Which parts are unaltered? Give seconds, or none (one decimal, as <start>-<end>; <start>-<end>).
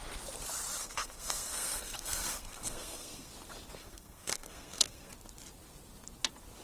0.0-0.8; 3.3-3.8; 5.1-6.6